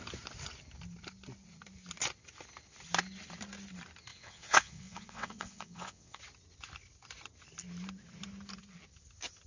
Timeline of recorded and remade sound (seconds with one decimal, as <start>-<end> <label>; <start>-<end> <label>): 0.0-4.1 recorded; 4.1-6.2 remade; 6.2-9.5 recorded